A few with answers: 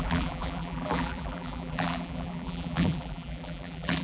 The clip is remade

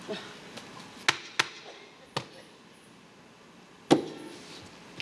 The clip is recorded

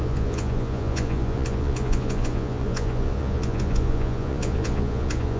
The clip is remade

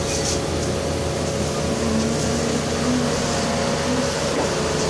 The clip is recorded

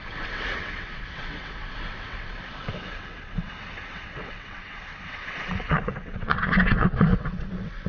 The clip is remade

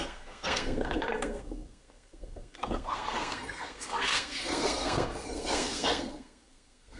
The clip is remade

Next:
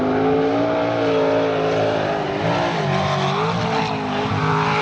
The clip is recorded